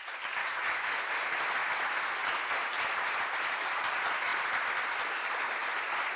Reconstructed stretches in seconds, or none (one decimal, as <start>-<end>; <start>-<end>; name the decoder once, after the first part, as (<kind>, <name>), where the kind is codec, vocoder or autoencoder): 0.4-1.1 (autoencoder, DAC-VAE)